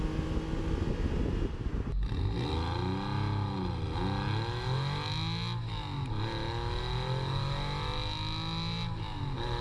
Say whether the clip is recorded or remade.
recorded